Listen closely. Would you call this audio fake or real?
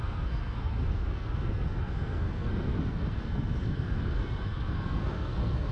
fake